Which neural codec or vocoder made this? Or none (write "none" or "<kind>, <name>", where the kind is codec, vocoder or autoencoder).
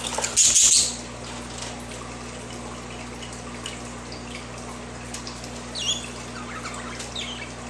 none